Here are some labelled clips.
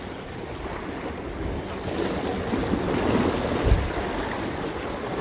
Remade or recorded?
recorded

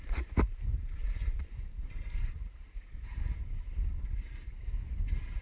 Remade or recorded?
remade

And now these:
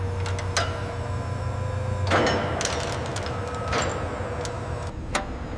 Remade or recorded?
recorded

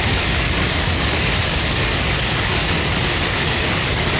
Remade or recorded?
remade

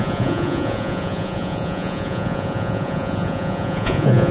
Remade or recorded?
remade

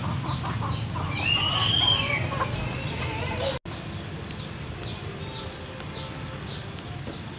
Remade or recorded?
recorded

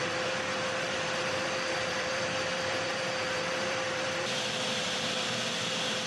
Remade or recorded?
remade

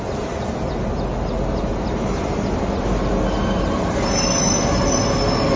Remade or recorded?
recorded